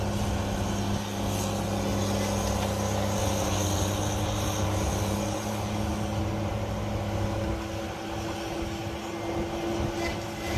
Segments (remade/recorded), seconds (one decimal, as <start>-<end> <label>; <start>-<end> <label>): 0.0-10.6 recorded